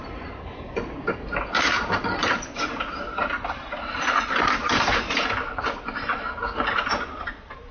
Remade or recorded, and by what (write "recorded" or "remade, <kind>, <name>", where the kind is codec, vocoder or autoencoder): remade, vocoder, BigVGAN v2